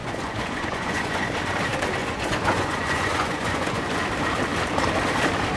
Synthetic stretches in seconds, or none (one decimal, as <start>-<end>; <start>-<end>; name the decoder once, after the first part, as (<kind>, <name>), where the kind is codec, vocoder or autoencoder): 0.0-1.3 (vocoder, Vocos); 2.0-4.0